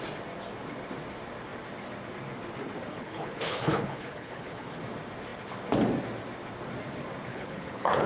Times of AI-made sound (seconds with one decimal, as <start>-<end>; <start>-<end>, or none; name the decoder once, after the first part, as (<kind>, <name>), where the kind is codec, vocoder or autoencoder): 2.9-4.8 (codec, HILCodec); 7.3-8.1

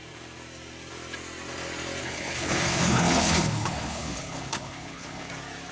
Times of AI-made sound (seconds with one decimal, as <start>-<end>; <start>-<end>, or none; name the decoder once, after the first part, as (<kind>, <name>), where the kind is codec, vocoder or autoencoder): 2.0-5.3 (codec, HILCodec)

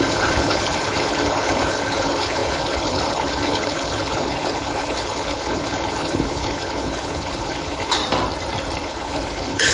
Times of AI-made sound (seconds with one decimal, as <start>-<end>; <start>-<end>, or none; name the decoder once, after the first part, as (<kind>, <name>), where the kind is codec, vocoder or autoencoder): 0.0-8.0 (codec, HILCodec); 8.8-9.7

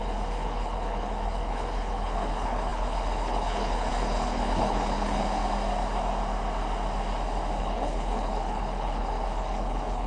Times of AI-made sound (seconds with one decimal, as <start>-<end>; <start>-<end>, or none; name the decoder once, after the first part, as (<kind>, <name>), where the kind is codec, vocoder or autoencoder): 0.0-5.4 (codec, HILCodec); 7.6-10.1